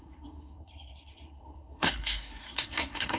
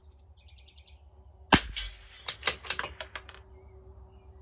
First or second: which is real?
second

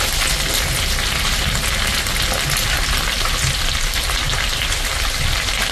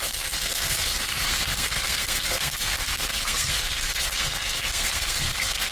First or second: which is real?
first